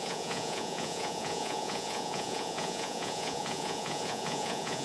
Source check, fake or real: fake